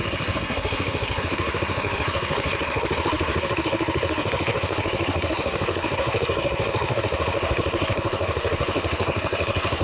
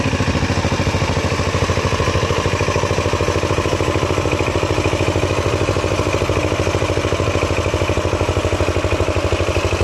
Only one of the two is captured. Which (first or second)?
second